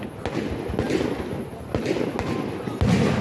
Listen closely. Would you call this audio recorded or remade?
recorded